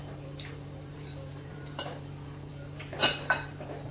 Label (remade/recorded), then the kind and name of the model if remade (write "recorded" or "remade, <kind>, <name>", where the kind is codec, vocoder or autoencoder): remade, vocoder, BigVGAN v2